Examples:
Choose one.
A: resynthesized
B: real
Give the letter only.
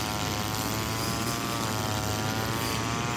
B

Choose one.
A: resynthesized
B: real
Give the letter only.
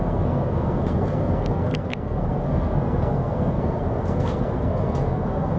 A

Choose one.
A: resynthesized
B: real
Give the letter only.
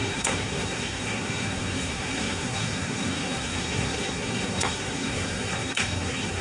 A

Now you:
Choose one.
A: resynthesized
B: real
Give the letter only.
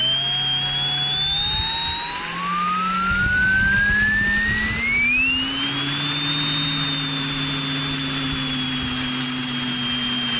B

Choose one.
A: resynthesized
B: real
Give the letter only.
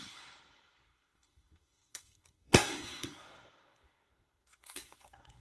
A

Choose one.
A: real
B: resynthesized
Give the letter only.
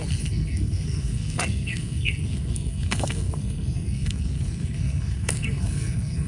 B